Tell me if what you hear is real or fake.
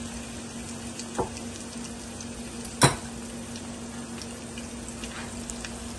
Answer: real